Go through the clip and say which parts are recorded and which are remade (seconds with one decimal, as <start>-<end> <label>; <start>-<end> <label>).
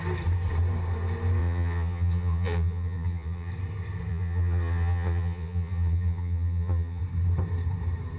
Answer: 0.0-1.4 recorded; 1.4-3.5 remade; 3.5-4.1 recorded; 4.1-7.0 remade; 7.0-8.2 recorded